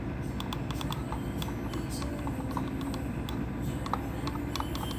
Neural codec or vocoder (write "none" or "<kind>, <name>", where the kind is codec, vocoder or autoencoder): none